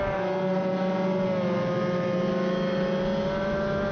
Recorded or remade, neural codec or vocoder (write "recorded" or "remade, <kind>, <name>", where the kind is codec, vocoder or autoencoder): recorded